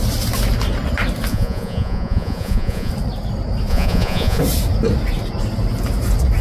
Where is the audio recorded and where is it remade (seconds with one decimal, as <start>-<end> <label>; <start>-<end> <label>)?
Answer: 0.0-1.3 recorded; 1.3-2.9 remade; 2.9-3.7 recorded; 3.7-4.4 remade; 4.4-6.4 recorded